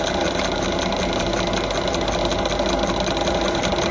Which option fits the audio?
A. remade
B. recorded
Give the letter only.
B